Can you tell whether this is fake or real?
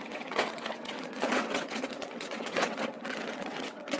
fake